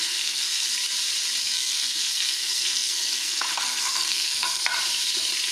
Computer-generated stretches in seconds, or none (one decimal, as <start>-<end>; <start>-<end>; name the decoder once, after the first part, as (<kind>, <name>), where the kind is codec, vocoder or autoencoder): 0.0-0.7 (codec, SNAC); 1.4-4.7